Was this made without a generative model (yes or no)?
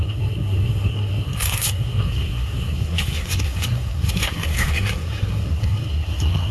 no